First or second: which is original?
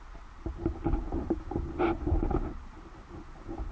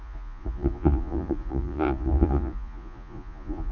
first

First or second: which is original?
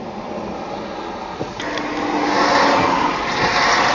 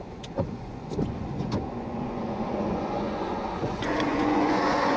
first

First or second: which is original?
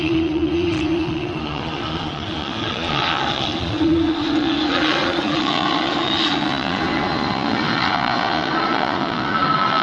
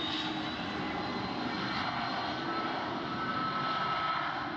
second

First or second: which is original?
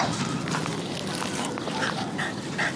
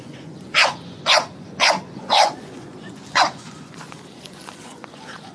first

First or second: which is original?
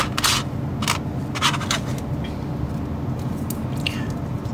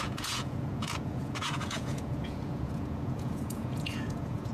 first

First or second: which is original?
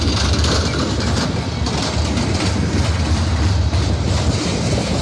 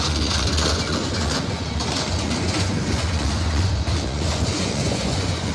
first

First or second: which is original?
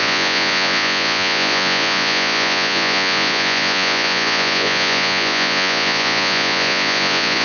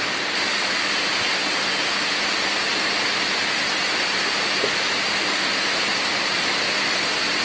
second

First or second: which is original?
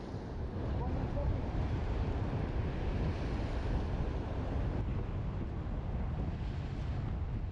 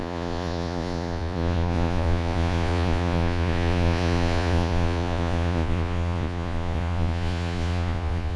first